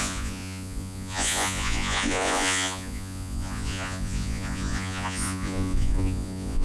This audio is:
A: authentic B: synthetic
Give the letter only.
B